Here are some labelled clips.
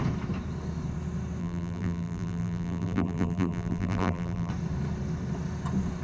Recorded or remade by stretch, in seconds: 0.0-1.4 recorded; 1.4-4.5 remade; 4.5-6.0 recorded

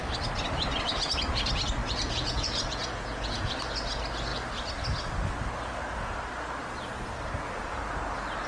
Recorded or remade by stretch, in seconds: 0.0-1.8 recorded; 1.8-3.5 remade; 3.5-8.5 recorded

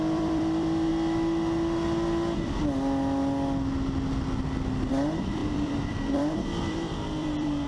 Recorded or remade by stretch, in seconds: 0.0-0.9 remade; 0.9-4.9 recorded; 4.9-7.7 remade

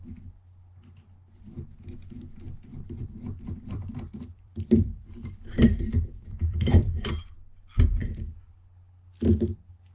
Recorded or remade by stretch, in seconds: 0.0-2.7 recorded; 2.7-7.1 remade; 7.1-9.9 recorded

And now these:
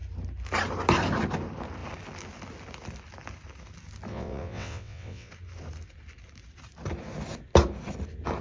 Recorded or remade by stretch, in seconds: 0.0-4.1 recorded; 4.1-5.3 remade; 5.3-8.4 recorded